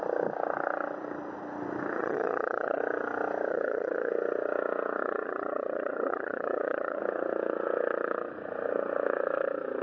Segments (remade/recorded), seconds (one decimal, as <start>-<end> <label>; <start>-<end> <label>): 0.0-2.0 recorded; 2.0-2.8 remade; 2.8-3.5 recorded; 3.5-4.1 remade; 4.1-5.0 recorded; 5.0-7.0 remade; 7.0-9.8 recorded